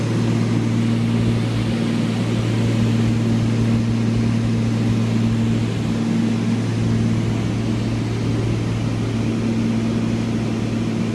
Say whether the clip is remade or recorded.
recorded